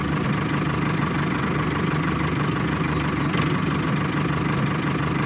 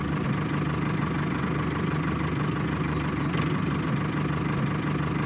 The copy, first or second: first